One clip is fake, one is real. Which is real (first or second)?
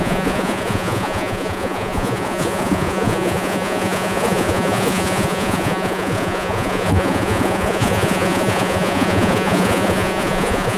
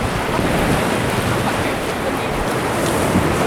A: second